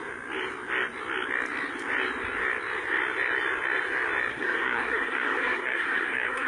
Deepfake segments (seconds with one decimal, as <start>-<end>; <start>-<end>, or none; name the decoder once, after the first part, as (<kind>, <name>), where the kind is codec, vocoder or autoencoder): 4.3-6.5 (codec, SNAC)